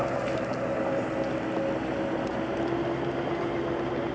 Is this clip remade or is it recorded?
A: recorded